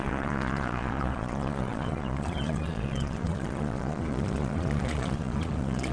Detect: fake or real fake